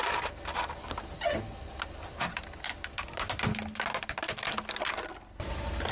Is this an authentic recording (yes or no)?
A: yes